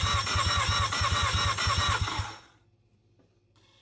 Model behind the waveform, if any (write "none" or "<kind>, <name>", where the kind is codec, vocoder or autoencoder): none